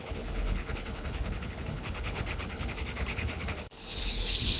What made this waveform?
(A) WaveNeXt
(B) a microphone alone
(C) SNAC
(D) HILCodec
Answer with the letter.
D